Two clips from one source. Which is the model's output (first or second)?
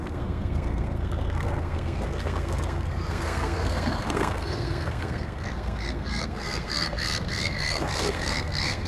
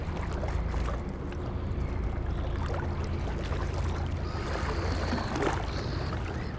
first